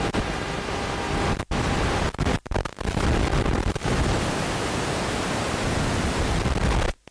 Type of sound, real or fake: real